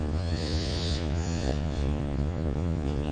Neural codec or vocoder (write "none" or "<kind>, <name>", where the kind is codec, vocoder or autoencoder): vocoder, Vocos